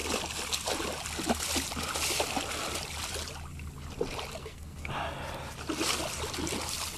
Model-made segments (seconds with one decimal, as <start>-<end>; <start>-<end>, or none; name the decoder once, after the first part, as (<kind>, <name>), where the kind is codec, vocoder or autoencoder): 4.4-4.9 (codec, SNAC)